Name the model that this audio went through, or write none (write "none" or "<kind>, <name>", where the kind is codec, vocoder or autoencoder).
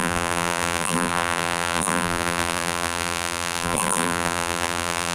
vocoder, BigVGAN v2